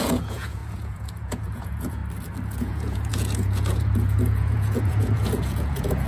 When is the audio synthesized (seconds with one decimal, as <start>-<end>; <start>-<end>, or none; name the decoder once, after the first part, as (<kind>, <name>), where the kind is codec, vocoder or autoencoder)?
0.0-2.0 (vocoder, Vocos); 2.6-6.1